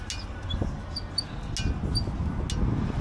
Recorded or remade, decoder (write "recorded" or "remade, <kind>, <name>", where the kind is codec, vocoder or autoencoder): recorded